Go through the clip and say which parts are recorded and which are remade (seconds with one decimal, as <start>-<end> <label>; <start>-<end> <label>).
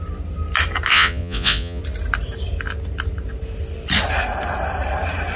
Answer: 0.0-0.9 recorded; 0.9-1.8 remade; 1.8-5.4 recorded